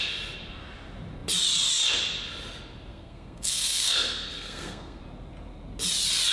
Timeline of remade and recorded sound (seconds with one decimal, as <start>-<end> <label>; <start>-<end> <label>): 0.0-2.9 recorded; 2.9-5.0 remade; 5.0-6.3 recorded